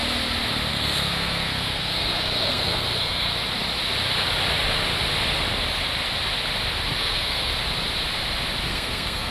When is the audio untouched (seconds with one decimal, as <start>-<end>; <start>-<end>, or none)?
0.0-0.7; 3.3-7.0; 7.5-8.7